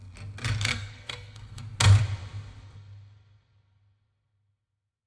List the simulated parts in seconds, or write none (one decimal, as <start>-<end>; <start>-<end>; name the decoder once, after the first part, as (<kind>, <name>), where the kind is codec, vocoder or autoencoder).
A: 0.7-1.6 (codec, SNAC)